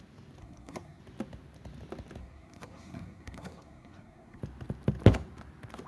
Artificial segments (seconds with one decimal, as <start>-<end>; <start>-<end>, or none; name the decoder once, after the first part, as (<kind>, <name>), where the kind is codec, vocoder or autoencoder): 0.4-1.0 (codec, SNAC); 2.2-4.4